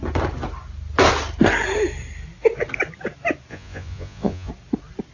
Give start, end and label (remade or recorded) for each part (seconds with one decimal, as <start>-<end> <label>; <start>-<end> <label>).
0.0-3.5 recorded; 3.5-4.5 remade; 4.5-5.1 recorded